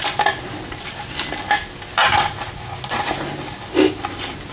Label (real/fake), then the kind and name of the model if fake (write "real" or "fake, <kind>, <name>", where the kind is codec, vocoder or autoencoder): real